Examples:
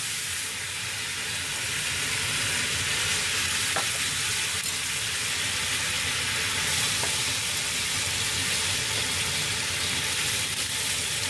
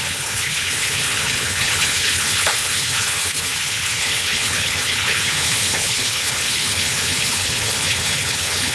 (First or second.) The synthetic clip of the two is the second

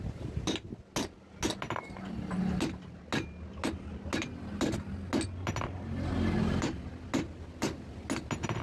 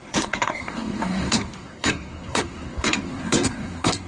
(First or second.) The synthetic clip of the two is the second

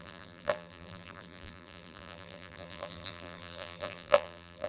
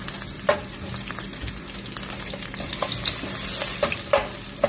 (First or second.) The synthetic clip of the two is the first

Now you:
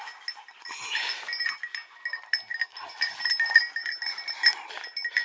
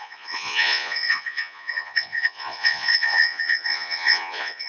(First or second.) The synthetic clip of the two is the second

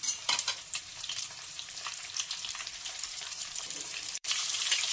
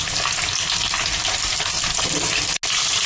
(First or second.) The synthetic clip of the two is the first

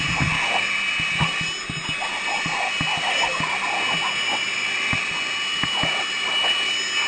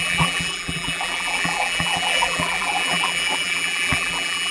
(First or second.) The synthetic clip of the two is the second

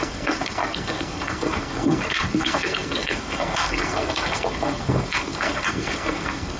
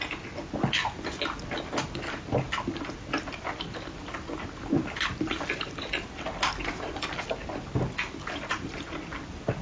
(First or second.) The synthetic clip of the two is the first